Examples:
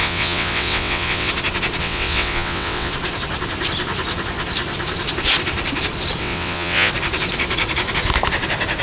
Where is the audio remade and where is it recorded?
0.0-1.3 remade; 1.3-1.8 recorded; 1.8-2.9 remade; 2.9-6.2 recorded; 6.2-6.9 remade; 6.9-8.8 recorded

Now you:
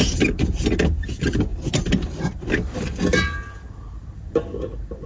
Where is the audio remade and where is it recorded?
0.0-5.1 recorded

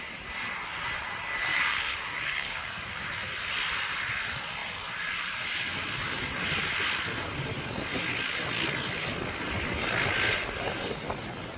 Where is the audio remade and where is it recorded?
0.0-1.5 recorded; 1.5-2.9 remade; 2.9-11.6 recorded

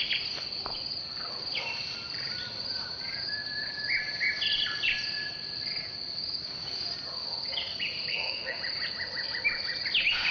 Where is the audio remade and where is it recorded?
0.0-8.1 recorded; 8.1-8.6 remade; 8.6-10.3 recorded

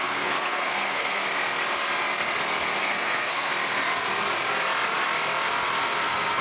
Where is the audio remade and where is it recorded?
0.0-1.2 remade; 1.2-2.8 recorded; 2.8-3.5 remade; 3.5-6.0 recorded; 6.0-6.4 remade

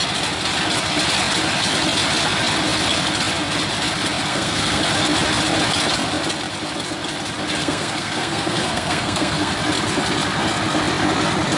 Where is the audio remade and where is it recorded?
0.0-4.3 recorded; 4.3-4.8 remade; 4.8-7.6 recorded; 7.6-9.5 remade; 9.5-11.6 recorded

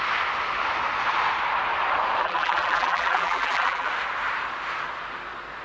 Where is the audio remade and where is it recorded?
0.0-2.2 recorded; 2.2-3.9 remade; 3.9-5.6 recorded

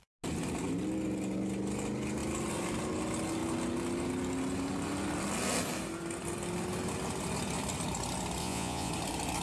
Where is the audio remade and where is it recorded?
0.0-8.4 recorded; 8.4-8.9 remade; 8.9-9.4 recorded